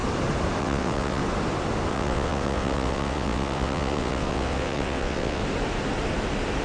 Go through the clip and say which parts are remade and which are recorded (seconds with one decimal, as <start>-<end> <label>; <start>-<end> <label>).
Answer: 0.0-0.6 recorded; 0.6-1.2 remade; 1.2-1.9 recorded; 1.9-5.4 remade; 5.4-6.6 recorded